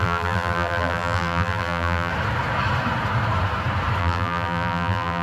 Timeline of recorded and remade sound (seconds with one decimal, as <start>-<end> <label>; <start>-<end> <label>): 0.0-2.1 remade; 2.1-4.0 recorded; 4.0-5.2 remade

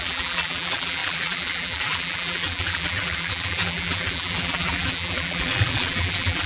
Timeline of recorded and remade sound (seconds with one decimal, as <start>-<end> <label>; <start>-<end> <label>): 0.0-6.5 remade

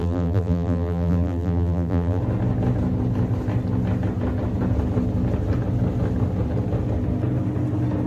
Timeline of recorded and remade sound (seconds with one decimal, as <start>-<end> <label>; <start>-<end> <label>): 0.0-2.2 remade; 2.2-8.1 recorded

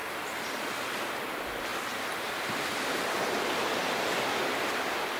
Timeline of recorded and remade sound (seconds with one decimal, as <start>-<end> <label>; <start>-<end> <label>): 0.0-5.2 remade

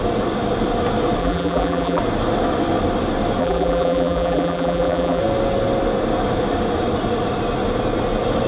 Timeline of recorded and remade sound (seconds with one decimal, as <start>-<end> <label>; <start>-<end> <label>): 0.0-1.2 recorded; 1.2-2.0 remade; 2.0-3.4 recorded; 3.4-5.2 remade; 5.2-8.5 recorded

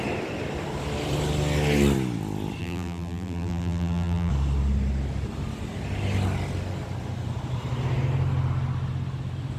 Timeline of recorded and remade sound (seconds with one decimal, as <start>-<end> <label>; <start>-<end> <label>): 0.0-2.6 recorded; 2.6-4.3 remade; 4.3-9.6 recorded

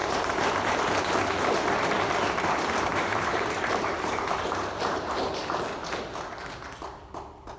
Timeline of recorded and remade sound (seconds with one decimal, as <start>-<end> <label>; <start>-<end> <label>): 0.0-0.8 remade; 0.8-2.9 recorded; 2.9-5.4 remade; 5.4-7.6 recorded